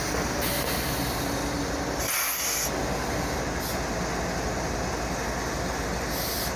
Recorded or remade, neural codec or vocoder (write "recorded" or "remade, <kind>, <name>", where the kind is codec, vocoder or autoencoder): recorded